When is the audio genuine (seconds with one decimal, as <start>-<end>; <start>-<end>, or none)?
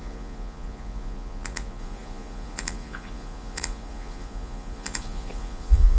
none